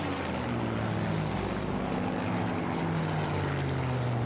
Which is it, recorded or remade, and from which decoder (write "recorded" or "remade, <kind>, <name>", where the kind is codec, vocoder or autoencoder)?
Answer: recorded